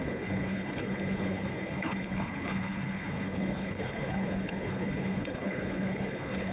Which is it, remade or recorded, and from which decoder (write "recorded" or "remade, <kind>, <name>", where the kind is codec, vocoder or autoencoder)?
remade, codec, HILCodec